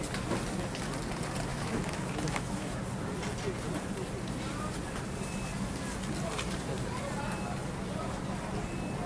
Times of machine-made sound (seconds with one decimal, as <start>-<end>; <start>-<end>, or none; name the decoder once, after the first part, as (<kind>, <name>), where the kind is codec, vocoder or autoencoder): 1.5-2.8 (autoencoder, DAC-VAE)